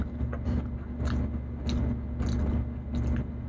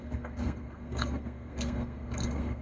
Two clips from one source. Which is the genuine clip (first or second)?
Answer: first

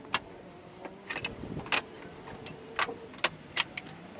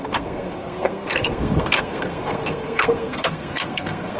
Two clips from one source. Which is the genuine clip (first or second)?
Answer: first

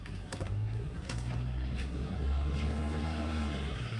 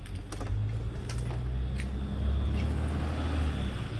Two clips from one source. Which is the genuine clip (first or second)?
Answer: second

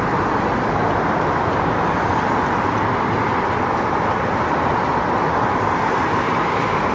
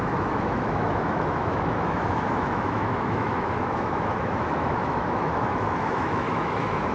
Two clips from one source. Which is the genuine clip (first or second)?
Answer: first